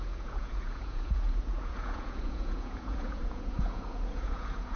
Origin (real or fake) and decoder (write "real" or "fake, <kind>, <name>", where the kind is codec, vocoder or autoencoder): fake, vocoder, Vocos